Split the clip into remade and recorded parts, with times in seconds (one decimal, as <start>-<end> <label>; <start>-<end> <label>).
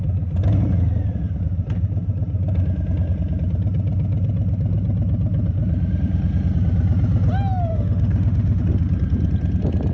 0.0-7.7 recorded; 7.7-8.6 remade; 8.6-9.9 recorded